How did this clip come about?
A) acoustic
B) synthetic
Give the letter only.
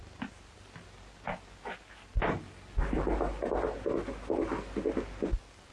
A